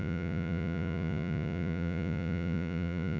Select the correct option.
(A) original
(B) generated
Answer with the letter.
B